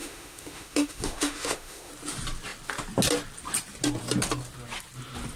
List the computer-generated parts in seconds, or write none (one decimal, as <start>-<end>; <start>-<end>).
0.0-1.9